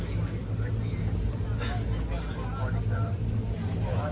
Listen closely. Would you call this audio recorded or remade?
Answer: recorded